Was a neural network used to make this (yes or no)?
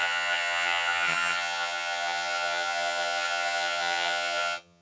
yes